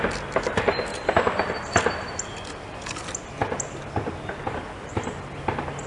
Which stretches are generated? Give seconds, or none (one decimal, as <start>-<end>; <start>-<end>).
0.0-5.9